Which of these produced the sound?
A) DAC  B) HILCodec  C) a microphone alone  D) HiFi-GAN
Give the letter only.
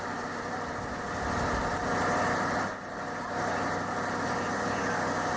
C